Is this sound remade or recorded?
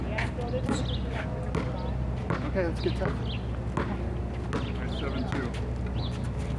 recorded